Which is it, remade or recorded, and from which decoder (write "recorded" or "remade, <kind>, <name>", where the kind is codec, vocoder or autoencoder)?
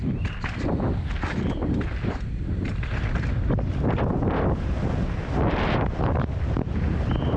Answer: recorded